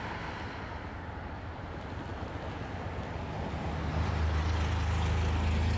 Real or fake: real